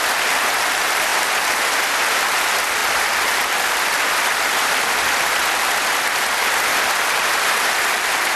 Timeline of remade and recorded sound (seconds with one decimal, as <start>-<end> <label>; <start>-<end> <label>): 0.0-1.1 remade; 1.1-1.9 recorded; 1.9-2.8 remade; 2.8-3.7 recorded; 3.7-8.4 remade